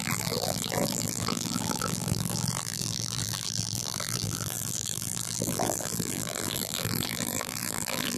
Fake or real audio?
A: fake